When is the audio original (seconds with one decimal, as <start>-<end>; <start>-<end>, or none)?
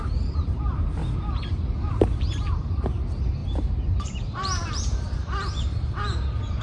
1.0-1.9